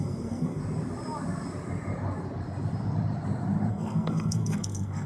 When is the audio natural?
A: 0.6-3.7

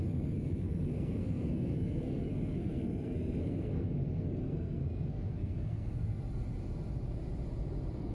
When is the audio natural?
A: 6.1-8.1

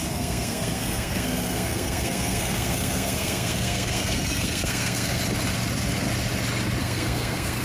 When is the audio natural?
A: 5.2-6.8

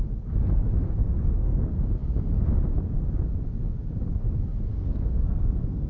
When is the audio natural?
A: 0.0-1.0; 1.6-4.7